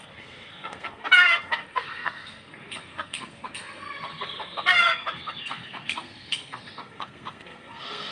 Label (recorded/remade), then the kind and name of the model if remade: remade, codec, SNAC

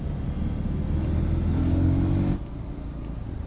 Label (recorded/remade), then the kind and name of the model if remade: recorded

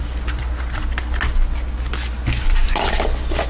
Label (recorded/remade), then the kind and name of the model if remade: recorded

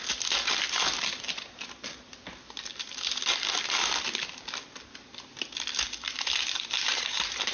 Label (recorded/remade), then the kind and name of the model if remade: recorded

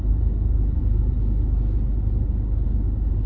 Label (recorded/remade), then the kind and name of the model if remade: recorded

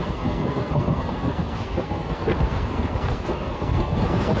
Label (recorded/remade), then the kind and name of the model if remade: remade, codec, SNAC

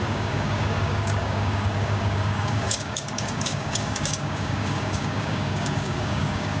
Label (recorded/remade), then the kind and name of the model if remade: remade, codec, DAC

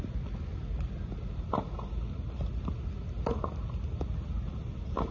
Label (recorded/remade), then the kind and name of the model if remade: recorded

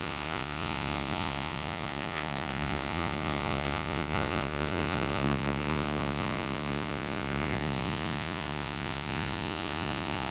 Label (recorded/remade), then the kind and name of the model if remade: remade, vocoder, Vocos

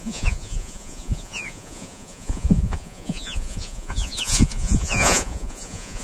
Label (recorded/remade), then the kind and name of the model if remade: remade, vocoder, Vocos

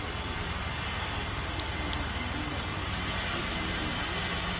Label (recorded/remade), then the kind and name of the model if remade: recorded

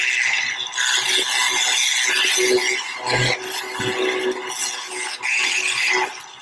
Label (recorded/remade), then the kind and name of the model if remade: recorded